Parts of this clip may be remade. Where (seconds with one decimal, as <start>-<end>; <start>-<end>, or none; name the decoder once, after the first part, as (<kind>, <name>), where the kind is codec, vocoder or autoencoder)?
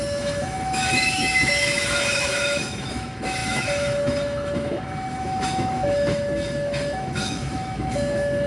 0.0-8.5 (autoencoder, DAC-VAE)